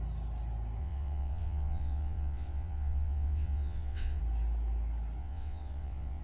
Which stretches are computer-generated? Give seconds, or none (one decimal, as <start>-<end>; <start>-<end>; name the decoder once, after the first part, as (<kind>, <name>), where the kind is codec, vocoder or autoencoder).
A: 0.8-4.2 (vocoder, WaveNeXt); 5.2-6.2